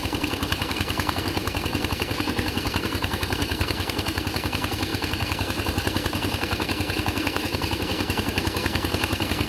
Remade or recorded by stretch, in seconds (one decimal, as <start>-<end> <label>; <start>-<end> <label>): 0.0-9.5 remade

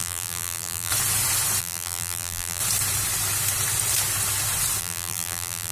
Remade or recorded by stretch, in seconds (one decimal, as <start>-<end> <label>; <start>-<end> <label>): 0.0-0.9 remade; 0.9-1.6 recorded; 1.6-2.6 remade; 2.6-4.8 recorded; 4.8-5.7 remade